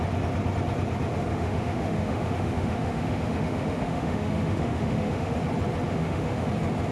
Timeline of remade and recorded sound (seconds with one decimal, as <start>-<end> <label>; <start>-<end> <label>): 0.0-1.3 recorded; 1.3-5.4 remade; 5.4-5.9 recorded; 5.9-6.5 remade; 6.5-6.9 recorded